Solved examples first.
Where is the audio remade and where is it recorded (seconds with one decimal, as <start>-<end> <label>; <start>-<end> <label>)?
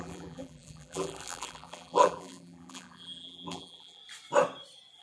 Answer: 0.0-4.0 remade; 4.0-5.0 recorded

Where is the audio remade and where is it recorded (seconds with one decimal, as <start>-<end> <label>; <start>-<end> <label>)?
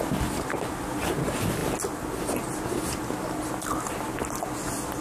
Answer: 0.0-5.0 recorded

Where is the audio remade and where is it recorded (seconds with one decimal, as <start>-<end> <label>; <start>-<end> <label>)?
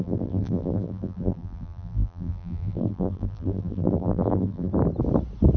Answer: 0.0-4.7 remade; 4.7-5.6 recorded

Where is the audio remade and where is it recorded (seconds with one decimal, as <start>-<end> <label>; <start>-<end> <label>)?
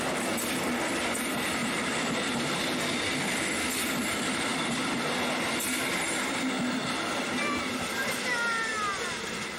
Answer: 0.0-1.6 recorded; 1.6-2.6 remade; 2.6-9.6 recorded